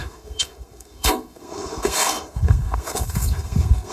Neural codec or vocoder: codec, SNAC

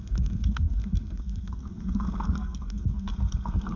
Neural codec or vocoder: codec, SNAC